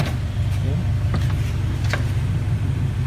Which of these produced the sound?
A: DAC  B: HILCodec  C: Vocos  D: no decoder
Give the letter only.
D